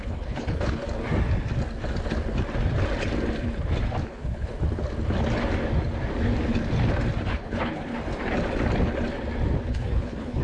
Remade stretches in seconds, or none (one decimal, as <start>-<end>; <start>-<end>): 0.0-0.8; 4.0-4.6; 7.3-7.9; 9.7-10.4